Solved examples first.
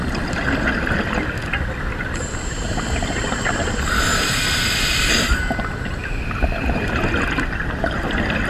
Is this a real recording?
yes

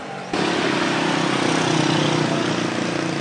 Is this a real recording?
yes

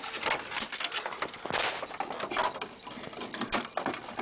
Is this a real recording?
yes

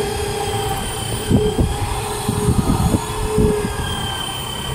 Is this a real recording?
yes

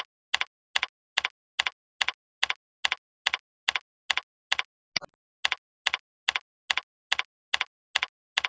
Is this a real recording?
yes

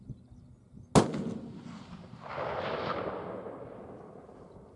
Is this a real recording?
yes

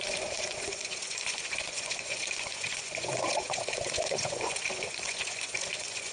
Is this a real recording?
no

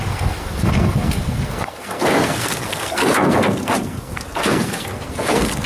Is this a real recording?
no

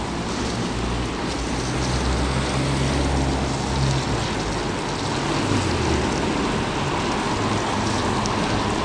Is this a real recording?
yes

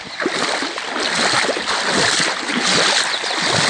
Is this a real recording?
yes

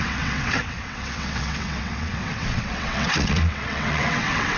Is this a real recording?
no